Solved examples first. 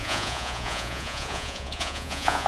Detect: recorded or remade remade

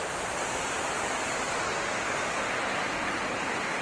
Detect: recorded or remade recorded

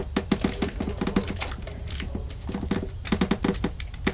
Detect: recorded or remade recorded